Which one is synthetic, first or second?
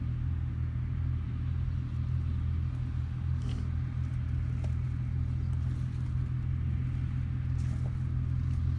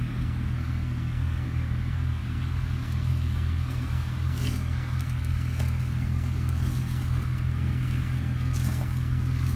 second